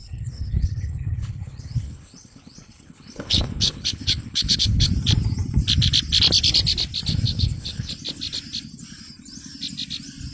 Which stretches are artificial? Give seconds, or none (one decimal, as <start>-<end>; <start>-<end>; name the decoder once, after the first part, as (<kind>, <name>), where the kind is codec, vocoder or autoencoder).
0.0-4.9 (codec, HILCodec); 7.1-7.9